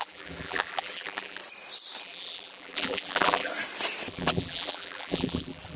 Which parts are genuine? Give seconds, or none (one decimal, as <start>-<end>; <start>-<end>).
1.4-2.0; 3.5-4.1